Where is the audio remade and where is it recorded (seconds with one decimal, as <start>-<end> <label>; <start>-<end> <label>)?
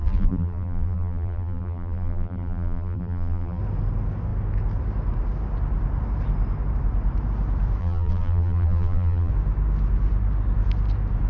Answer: 0.0-3.6 remade; 3.6-7.8 recorded; 7.8-9.3 remade; 9.3-11.3 recorded